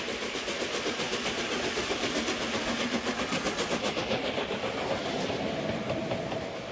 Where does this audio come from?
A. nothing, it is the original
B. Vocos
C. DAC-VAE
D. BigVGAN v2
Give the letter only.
A